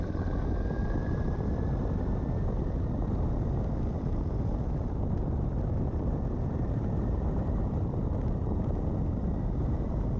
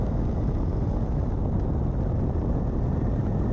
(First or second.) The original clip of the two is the second